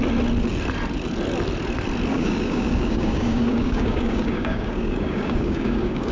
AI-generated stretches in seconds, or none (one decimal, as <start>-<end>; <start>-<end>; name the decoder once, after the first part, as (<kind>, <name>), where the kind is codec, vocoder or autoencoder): 2.1-6.1 (codec, DAC)